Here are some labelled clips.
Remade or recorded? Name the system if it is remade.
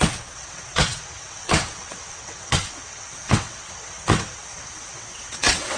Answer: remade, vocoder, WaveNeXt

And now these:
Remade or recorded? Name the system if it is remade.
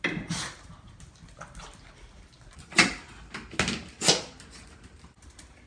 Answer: recorded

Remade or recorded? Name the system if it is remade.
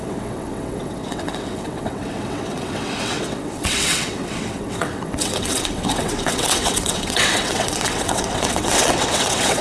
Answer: remade, vocoder, WaveNeXt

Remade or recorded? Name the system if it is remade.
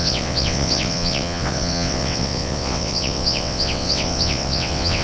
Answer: remade, vocoder, WaveNeXt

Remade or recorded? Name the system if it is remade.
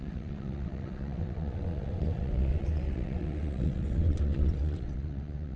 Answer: remade, vocoder, WaveNeXt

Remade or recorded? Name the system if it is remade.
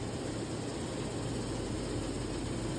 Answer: recorded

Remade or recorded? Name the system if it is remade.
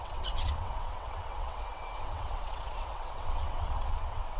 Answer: remade, vocoder, WaveNeXt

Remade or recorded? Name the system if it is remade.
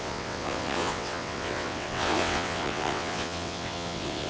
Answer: remade, vocoder, WaveNeXt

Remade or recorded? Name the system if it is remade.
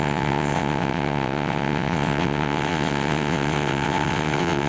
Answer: remade, vocoder, WaveNeXt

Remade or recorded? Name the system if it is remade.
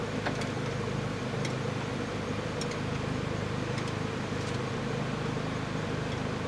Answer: recorded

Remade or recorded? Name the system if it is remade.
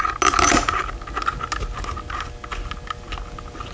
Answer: recorded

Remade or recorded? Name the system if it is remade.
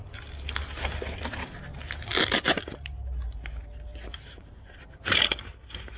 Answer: recorded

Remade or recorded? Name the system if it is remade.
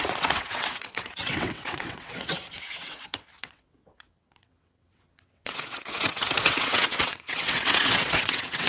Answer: remade, vocoder, WaveNeXt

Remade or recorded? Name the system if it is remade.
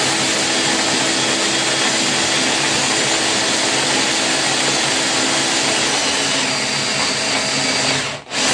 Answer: recorded